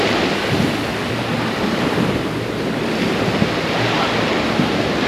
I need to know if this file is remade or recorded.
recorded